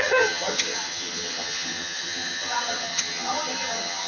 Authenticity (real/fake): fake